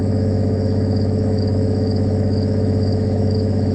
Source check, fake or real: fake